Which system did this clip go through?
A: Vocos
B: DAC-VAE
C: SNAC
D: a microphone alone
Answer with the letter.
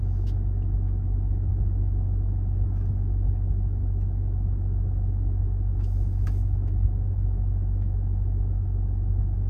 B